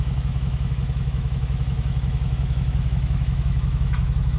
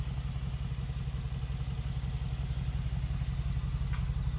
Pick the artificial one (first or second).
first